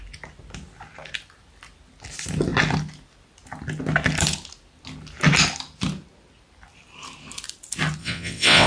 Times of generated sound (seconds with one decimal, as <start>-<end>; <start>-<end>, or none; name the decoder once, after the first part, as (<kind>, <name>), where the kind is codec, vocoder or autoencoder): 8.0-8.7 (vocoder, WaveNeXt)